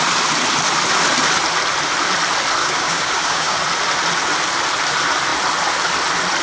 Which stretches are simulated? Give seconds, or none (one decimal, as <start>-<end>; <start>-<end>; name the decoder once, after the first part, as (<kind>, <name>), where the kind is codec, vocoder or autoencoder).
2.6-3.6 (codec, DAC)